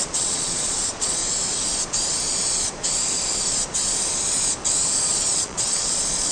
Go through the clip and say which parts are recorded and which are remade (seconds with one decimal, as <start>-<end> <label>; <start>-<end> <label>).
0.0-1.2 remade; 1.2-5.0 recorded; 5.0-6.3 remade